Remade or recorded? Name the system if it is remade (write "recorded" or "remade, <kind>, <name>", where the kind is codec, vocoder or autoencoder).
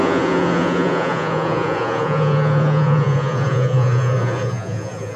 remade, vocoder, Vocos